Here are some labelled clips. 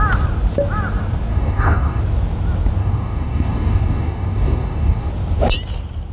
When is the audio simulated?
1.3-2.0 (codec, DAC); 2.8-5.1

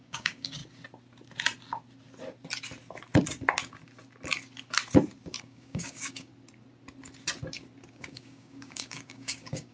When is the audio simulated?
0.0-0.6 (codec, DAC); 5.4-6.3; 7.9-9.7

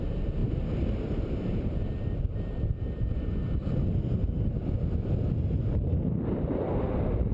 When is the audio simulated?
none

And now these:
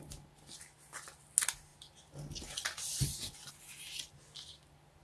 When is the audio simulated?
none